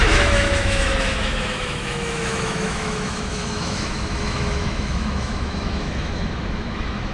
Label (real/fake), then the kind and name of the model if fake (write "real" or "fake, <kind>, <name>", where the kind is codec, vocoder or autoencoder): fake, autoencoder, DAC-VAE